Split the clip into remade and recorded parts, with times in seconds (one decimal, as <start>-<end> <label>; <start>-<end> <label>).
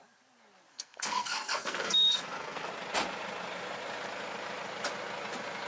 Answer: 0.0-0.7 recorded; 0.7-2.7 remade; 2.7-5.7 recorded